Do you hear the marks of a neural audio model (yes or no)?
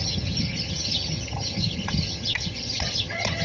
yes